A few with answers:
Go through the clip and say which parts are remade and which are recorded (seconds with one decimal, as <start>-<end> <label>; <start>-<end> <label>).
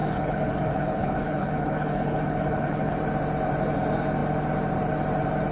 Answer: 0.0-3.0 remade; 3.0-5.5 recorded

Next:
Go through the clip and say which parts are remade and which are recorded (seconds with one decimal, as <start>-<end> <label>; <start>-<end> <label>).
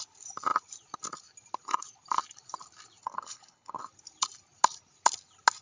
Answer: 0.0-3.0 recorded; 3.0-3.8 remade; 3.8-5.6 recorded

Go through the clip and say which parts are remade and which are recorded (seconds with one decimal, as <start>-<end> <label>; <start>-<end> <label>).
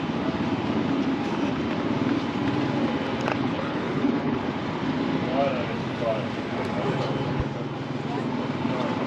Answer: 0.0-3.3 recorded; 3.3-4.4 remade; 4.4-9.1 recorded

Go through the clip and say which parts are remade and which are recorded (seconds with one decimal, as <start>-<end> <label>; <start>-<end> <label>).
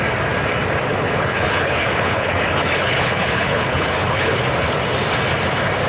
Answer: 0.0-0.9 recorded; 0.9-4.4 remade; 4.4-5.9 recorded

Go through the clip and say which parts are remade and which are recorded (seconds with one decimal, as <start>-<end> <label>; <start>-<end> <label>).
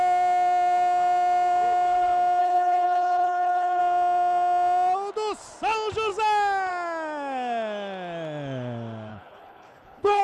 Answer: 0.0-2.4 recorded; 2.4-3.8 remade; 3.8-9.1 recorded; 9.1-10.2 remade